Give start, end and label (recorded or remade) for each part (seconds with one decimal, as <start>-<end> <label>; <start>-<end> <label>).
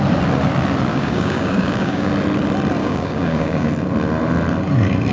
0.0-0.9 recorded; 0.9-2.1 remade; 2.1-2.8 recorded; 2.8-3.7 remade; 3.7-5.1 recorded